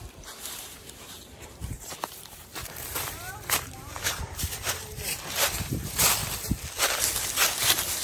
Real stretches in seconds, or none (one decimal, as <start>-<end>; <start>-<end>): 6.2-8.0